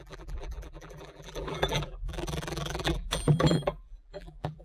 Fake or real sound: fake